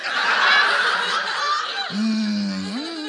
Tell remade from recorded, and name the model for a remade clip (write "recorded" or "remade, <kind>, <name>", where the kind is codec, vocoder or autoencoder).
recorded